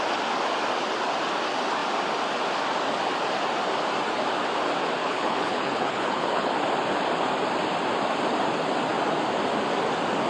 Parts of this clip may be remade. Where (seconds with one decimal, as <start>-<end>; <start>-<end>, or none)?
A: 5.0-6.5